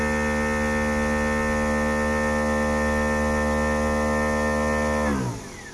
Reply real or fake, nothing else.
real